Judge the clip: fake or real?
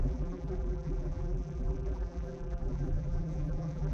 fake